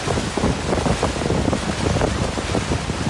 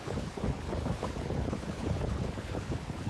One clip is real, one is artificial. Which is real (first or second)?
first